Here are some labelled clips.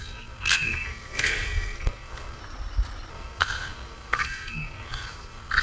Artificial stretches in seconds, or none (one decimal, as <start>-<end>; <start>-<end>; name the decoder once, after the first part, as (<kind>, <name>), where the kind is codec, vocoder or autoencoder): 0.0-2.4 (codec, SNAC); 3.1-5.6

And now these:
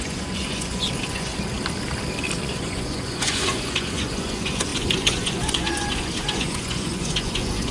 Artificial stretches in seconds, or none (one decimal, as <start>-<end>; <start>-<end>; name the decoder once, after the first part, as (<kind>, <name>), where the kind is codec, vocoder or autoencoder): 0.0-1.3 (vocoder, Vocos); 2.4-7.7

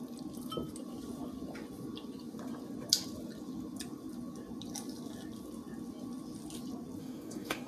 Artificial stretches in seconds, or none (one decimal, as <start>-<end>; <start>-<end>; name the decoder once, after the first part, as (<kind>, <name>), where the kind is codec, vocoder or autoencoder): 7.0-7.7 (codec, DAC)

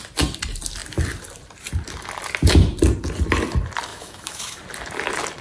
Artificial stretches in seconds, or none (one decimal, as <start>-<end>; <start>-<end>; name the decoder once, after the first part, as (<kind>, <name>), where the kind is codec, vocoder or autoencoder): 3.9-4.6 (autoencoder, DAC-VAE)

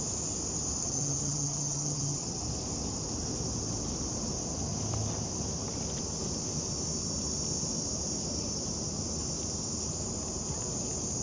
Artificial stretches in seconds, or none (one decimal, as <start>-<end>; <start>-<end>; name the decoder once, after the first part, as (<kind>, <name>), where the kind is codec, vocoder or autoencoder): 0.8-2.4 (vocoder, HiFi-GAN)

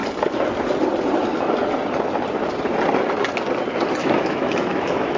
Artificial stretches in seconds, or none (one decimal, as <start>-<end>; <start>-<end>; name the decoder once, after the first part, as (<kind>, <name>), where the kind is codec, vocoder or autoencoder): 4.0-5.2 (autoencoder, DAC-VAE)

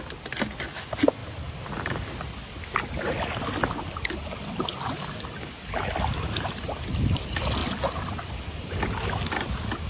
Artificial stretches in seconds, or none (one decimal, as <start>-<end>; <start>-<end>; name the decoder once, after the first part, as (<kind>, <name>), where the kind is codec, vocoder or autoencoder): none

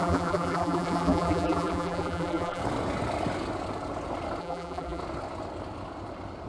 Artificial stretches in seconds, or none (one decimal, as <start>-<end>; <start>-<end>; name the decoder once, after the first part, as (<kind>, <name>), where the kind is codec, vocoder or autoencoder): 0.0-2.6 (vocoder, BigVGAN v2); 4.4-5.0